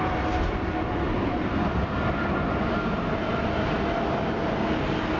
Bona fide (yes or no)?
yes